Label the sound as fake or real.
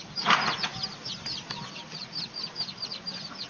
real